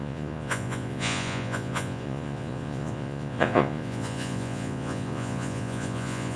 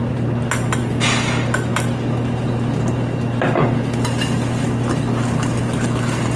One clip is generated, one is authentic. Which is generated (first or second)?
first